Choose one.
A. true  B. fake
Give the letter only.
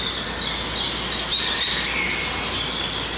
A